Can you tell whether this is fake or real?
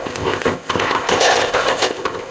fake